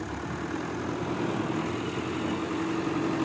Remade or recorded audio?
recorded